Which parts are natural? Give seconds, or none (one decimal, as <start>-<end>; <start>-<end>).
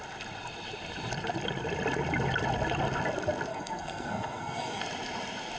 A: 0.0-3.5; 4.8-5.6